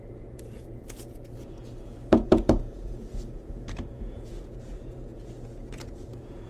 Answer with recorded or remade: remade